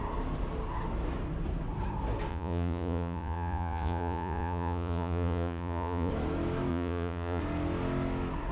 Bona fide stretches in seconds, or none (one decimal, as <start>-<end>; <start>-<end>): 0.0-2.3; 6.1-6.7; 7.4-8.5